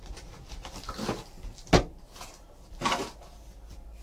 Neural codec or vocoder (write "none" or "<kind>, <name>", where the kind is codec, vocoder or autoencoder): none